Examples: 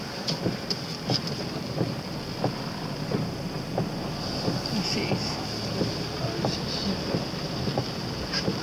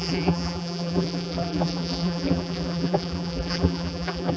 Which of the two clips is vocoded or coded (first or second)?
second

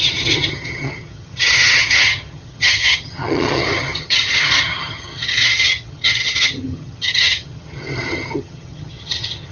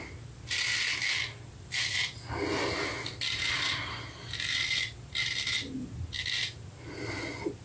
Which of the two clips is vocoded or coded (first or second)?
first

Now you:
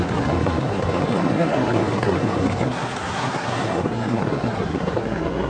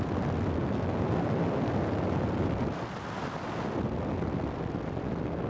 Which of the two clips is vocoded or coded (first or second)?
first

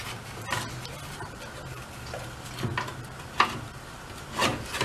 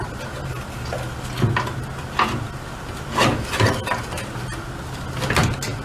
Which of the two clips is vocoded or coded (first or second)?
first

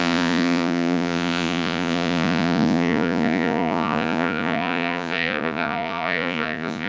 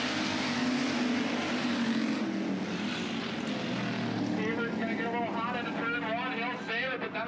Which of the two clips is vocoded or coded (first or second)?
first